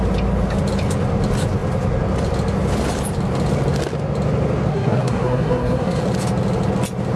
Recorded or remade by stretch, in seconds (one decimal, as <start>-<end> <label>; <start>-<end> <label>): 0.0-4.7 recorded; 4.7-6.0 remade; 6.0-7.2 recorded